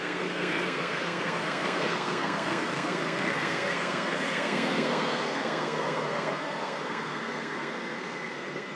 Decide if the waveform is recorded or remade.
remade